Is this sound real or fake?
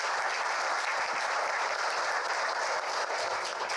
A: real